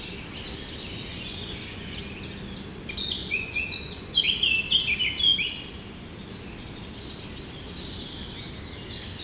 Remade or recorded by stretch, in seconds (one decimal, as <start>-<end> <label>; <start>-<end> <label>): 0.0-1.1 recorded; 1.1-2.0 remade; 2.0-3.2 recorded; 3.2-4.2 remade; 4.2-9.2 recorded